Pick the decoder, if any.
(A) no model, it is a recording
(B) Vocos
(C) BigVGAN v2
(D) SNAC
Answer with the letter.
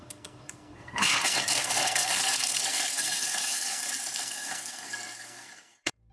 D